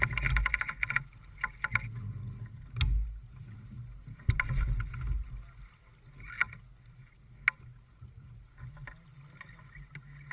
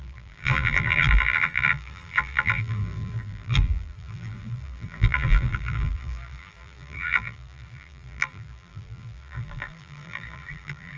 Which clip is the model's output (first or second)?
second